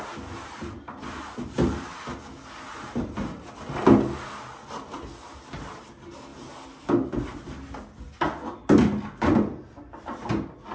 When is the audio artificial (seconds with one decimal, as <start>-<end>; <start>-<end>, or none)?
none

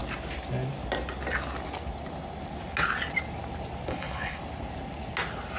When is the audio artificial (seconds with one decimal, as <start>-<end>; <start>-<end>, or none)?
3.9-4.4